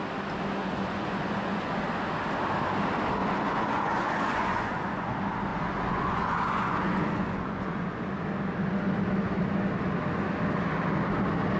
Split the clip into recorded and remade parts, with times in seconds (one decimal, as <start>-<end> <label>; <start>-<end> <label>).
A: 0.0-0.6 recorded; 0.6-1.8 remade; 1.8-3.2 recorded; 3.2-5.1 remade; 5.1-5.5 recorded; 5.5-8.1 remade; 8.1-11.6 recorded